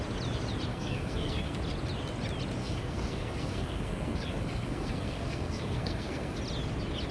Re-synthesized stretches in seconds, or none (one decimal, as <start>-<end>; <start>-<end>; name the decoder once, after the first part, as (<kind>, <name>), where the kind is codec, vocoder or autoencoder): 0.7-1.6 (codec, SNAC); 2.6-6.4